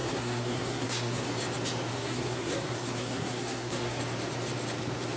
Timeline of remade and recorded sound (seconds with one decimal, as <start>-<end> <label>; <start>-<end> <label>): 0.0-1.3 remade; 1.3-1.9 recorded; 1.9-4.0 remade; 4.0-5.2 recorded